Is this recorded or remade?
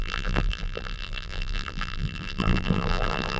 remade